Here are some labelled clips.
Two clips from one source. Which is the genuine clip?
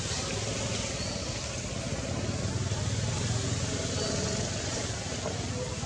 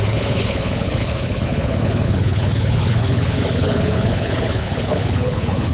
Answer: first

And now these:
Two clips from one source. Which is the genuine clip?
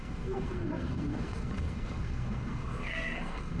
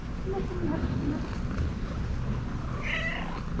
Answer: second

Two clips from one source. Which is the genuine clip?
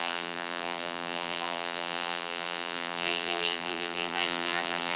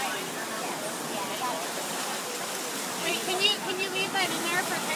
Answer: second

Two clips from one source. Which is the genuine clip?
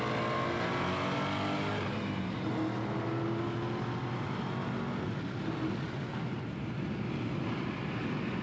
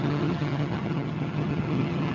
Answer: first